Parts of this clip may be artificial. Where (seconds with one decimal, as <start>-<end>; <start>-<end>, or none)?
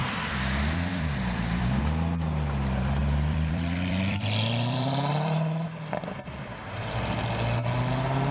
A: 0.0-1.8; 3.0-7.2